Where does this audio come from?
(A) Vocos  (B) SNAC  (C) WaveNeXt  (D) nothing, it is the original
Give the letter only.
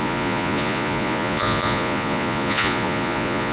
A